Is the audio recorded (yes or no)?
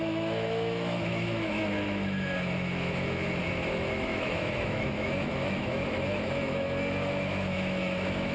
no